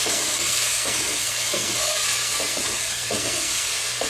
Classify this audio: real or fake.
fake